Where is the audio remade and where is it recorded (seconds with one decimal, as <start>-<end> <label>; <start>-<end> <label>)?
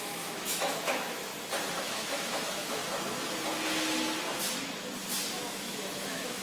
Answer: 0.0-1.3 remade; 1.3-1.8 recorded; 1.8-2.8 remade; 2.8-5.3 recorded; 5.3-6.4 remade